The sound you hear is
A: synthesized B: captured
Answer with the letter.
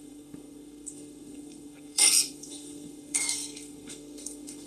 A